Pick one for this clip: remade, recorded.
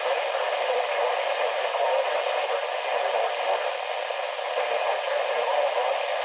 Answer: recorded